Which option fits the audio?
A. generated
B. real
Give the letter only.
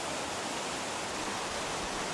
B